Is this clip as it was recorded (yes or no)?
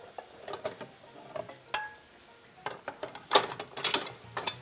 yes